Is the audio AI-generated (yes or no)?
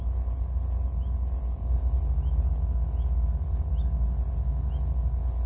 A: no